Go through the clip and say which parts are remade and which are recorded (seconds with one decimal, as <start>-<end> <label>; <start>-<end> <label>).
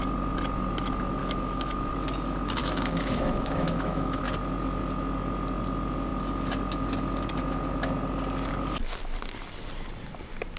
0.0-1.2 recorded; 1.2-1.9 remade; 1.9-2.6 recorded; 2.6-4.2 remade; 4.2-10.6 recorded